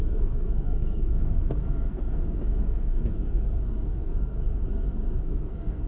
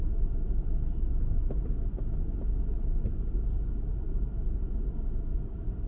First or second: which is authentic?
second